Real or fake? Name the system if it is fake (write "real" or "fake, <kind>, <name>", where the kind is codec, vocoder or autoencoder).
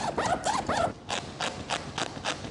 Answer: real